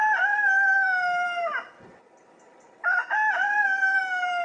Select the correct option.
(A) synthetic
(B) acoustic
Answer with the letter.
A